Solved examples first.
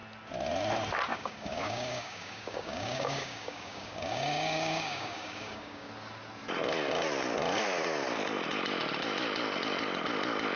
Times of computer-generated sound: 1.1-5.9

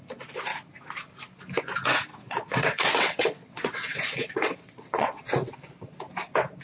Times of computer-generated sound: 2.1-5.5